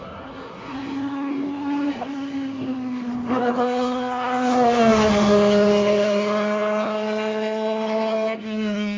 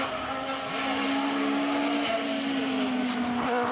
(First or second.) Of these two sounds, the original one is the second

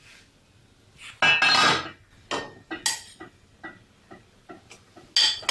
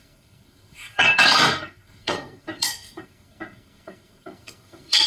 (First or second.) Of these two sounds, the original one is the first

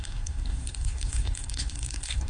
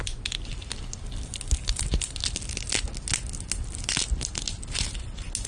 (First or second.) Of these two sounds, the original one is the second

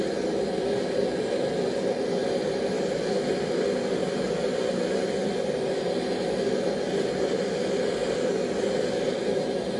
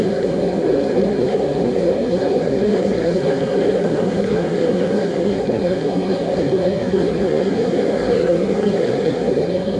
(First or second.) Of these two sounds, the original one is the first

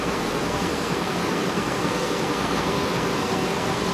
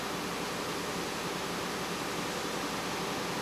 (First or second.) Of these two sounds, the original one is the second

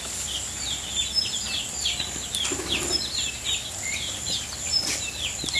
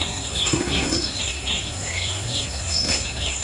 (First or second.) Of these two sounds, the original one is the first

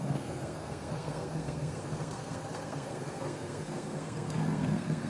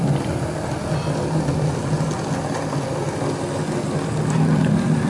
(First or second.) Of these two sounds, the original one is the second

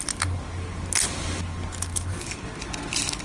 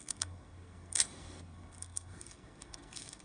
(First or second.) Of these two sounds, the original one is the first